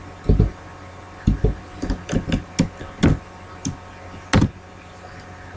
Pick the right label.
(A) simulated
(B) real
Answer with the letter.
B